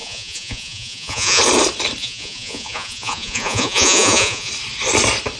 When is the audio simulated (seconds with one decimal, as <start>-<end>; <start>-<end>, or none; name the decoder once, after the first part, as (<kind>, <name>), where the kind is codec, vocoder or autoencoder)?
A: 0.0-1.4 (vocoder, Vocos); 2.0-4.5